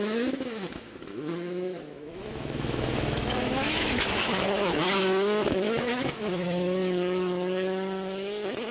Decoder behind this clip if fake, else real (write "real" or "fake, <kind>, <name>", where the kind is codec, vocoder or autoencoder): fake, autoencoder, DAC-VAE